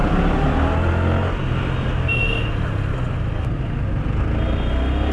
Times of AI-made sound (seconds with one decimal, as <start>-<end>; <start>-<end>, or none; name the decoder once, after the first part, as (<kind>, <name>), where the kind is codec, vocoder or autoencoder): none